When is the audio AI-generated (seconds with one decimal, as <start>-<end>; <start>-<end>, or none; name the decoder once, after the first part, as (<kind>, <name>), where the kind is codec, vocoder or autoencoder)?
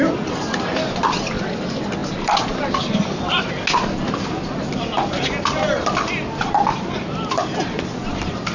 none